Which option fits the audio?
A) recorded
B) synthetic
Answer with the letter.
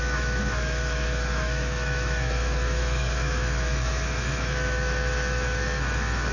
B